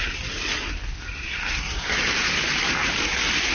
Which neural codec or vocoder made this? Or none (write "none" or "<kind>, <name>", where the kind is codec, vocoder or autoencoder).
none